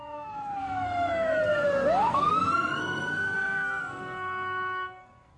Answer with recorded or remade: remade